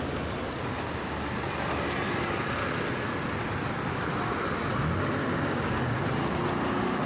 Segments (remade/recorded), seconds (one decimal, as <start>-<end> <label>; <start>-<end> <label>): 0.0-5.2 recorded; 5.2-5.9 remade; 5.9-7.1 recorded